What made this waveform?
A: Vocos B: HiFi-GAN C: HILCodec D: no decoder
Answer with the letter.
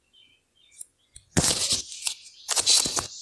A